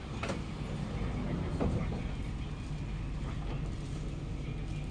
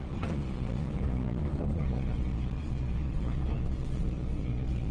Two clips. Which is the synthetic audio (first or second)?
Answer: second